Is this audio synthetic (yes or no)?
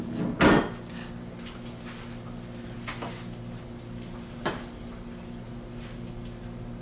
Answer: no